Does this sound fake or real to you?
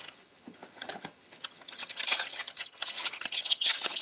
fake